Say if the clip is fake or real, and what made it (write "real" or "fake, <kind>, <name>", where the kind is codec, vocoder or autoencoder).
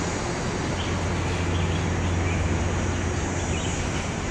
real